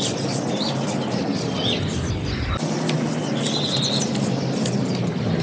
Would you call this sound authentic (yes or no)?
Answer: yes